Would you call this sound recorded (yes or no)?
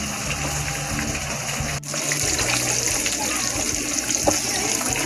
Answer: yes